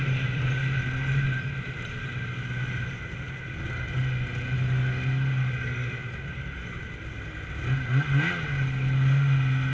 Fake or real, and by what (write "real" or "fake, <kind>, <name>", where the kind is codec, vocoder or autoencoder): real